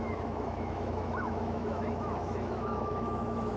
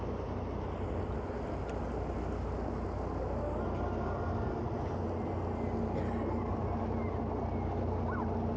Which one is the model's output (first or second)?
first